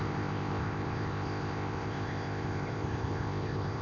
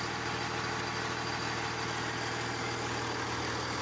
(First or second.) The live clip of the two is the second